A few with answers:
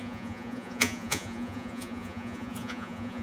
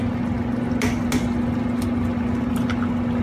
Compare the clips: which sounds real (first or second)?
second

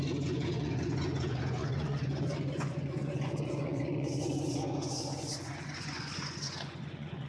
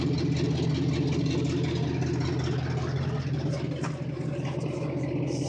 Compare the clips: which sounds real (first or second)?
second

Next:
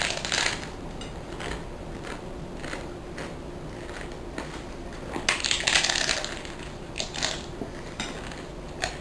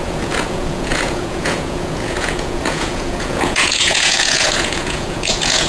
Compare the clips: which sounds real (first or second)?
first